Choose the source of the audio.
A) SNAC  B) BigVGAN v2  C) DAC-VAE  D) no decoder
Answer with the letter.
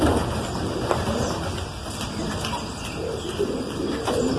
D